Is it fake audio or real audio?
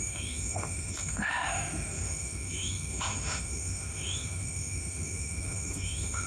fake